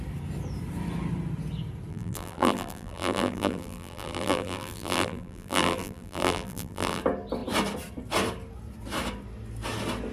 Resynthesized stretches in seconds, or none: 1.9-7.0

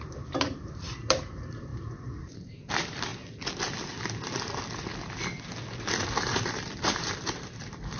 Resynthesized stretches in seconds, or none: 0.0-1.7; 2.2-3.1; 6.2-8.0

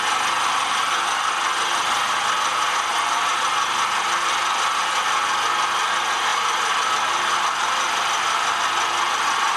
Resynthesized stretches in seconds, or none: 2.5-3.4; 6.3-6.9